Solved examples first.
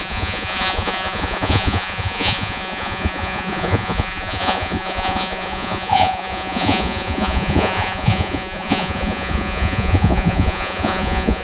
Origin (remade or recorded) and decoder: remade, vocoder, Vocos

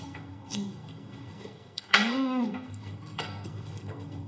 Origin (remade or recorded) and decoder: remade, codec, SNAC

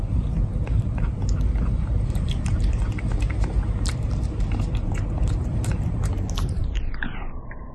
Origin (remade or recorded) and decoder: remade, vocoder, BigVGAN v2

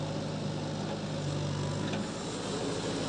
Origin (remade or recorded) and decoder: recorded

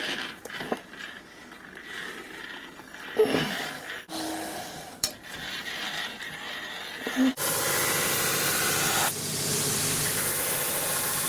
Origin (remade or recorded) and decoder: remade, vocoder, BigVGAN v2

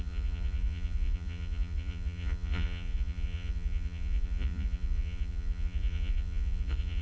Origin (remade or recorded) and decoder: remade, vocoder, Vocos